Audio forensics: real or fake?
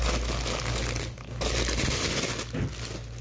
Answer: real